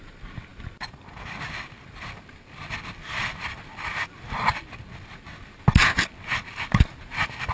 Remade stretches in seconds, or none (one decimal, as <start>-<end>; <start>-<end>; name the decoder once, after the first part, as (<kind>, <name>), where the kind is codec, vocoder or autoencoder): none